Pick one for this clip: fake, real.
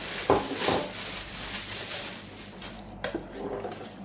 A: real